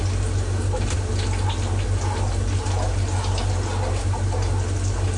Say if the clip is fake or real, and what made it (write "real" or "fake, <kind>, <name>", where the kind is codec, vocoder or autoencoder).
real